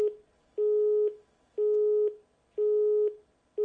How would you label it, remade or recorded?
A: recorded